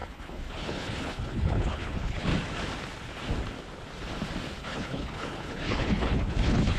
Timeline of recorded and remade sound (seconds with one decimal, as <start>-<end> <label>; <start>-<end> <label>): 0.0-2.3 remade; 2.3-4.6 recorded; 4.6-6.8 remade